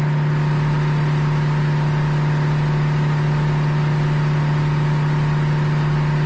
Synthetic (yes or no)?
no